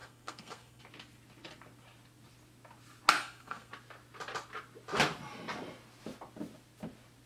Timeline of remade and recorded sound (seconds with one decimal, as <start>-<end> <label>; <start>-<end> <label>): 0.0-0.8 remade; 0.8-3.2 recorded; 3.2-3.7 remade; 3.7-7.3 recorded